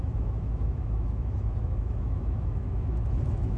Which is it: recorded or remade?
remade